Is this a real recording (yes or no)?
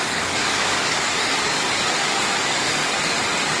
no